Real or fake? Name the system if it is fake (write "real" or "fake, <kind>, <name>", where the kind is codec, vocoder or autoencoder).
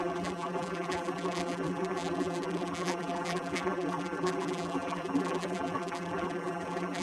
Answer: fake, vocoder, BigVGAN v2